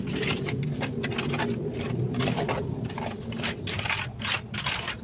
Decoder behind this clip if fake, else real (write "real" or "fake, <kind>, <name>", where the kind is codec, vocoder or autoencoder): real